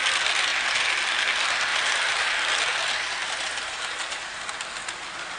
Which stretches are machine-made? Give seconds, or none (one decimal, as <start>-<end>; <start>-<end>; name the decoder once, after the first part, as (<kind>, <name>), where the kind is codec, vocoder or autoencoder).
1.7-2.3 (vocoder, BigVGAN v2); 3.2-4.4